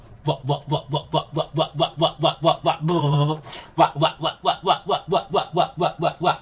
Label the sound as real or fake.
fake